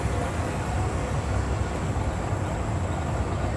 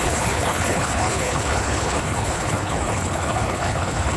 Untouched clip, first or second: first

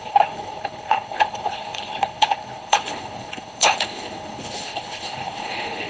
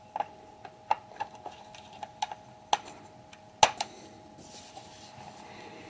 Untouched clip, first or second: second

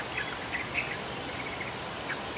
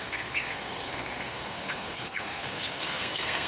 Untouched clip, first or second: first